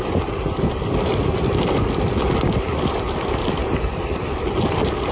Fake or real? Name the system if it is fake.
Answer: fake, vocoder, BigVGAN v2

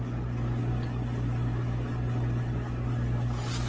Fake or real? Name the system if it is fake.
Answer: real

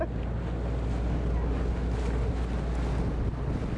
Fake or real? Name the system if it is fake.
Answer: real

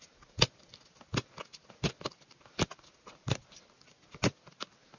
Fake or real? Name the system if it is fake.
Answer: real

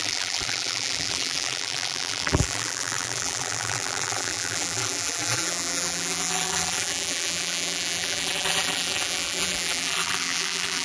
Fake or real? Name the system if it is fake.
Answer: fake, vocoder, BigVGAN v2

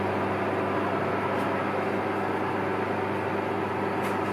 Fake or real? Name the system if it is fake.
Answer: real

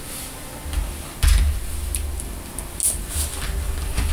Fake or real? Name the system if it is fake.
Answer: real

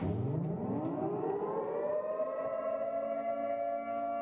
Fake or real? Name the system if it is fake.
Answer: real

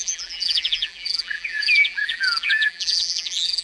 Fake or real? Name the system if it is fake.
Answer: fake, vocoder, BigVGAN v2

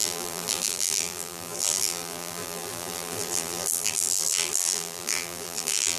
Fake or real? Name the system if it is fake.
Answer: fake, vocoder, BigVGAN v2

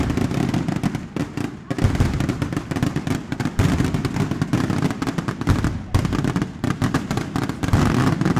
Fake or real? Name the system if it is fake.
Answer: real